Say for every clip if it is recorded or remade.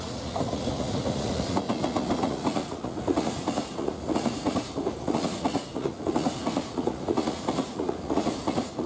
remade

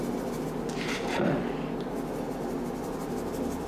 recorded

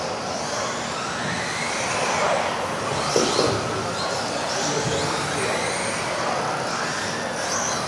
recorded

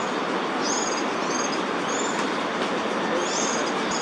recorded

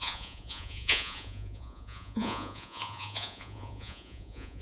remade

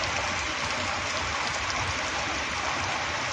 recorded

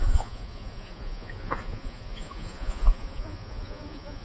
remade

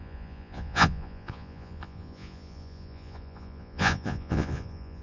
remade